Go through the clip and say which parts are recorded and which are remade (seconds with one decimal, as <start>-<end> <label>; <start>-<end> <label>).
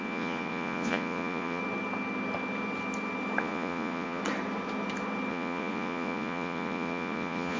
0.0-1.6 remade; 1.6-3.4 recorded; 3.4-4.2 remade; 4.2-5.3 recorded; 5.3-7.6 remade